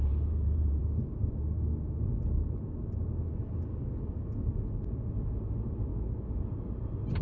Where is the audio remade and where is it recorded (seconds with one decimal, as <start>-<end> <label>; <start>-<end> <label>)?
0.0-0.8 remade; 0.8-5.1 recorded; 5.1-5.9 remade; 5.9-6.4 recorded; 6.4-7.2 remade